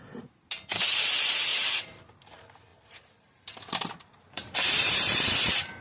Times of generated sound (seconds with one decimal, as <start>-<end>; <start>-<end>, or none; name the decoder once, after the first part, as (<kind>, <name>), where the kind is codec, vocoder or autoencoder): 1.5-2.0 (vocoder, BigVGAN v2); 2.7-5.8